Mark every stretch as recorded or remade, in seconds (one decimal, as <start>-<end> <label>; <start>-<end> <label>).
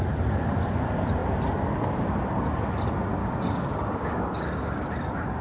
0.0-3.2 recorded; 3.2-4.7 remade; 4.7-5.4 recorded